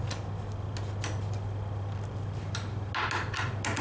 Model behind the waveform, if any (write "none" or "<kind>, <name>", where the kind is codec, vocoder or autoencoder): none